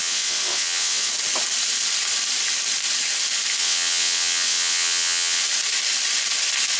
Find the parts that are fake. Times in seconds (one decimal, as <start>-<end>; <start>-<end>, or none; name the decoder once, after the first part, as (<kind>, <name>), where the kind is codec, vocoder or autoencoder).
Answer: 0.0-1.1 (vocoder, WaveNeXt); 3.6-5.4